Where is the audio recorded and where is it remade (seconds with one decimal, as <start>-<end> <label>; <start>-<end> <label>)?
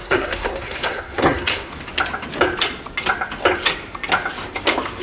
0.0-1.7 remade; 1.7-5.0 recorded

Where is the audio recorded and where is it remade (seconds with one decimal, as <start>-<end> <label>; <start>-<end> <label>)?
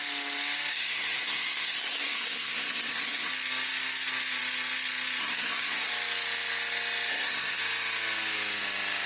0.0-0.7 recorded; 0.7-3.3 remade; 3.3-5.2 recorded; 5.2-5.9 remade; 5.9-7.1 recorded; 7.1-7.6 remade; 7.6-9.1 recorded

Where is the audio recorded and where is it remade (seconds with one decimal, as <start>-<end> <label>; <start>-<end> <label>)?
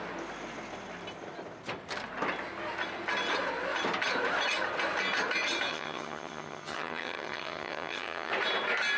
0.0-5.7 recorded; 5.7-8.3 remade; 8.3-9.0 recorded